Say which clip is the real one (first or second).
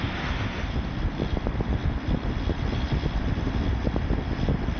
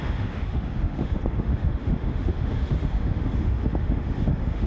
first